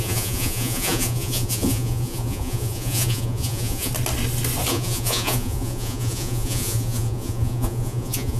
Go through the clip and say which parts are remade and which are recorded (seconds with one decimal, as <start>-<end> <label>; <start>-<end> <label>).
0.0-3.9 remade; 3.9-4.7 recorded; 4.7-8.4 remade